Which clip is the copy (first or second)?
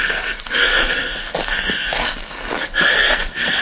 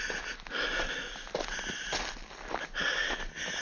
first